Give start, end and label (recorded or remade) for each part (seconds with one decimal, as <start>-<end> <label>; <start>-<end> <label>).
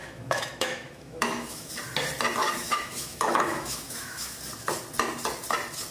0.0-1.7 remade; 1.7-2.4 recorded; 2.4-4.4 remade; 4.4-5.9 recorded